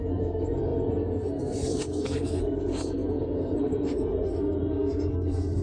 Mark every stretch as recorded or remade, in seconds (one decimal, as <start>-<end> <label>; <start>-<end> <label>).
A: 0.0-5.6 remade